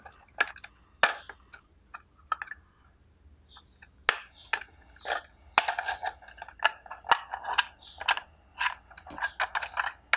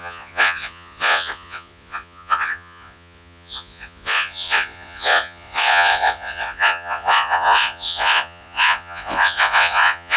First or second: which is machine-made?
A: second